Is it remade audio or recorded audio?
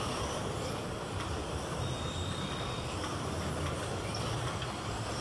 recorded